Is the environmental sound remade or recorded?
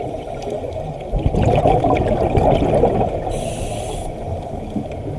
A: recorded